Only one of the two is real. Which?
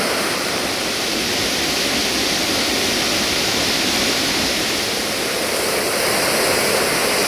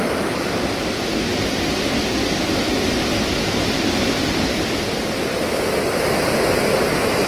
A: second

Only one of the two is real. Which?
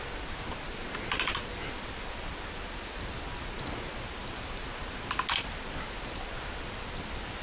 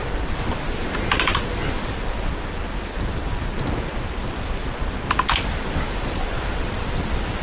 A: first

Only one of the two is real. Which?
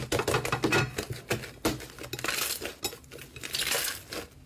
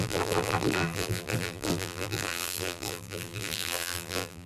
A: first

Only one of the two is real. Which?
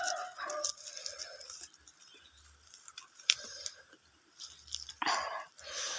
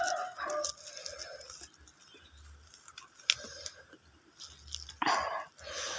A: second